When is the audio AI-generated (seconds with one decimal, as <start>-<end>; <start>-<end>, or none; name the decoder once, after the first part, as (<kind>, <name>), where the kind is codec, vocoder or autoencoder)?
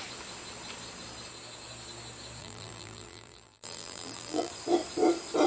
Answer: 2.4-4.5 (vocoder, BigVGAN v2)